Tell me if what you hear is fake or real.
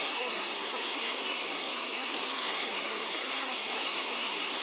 fake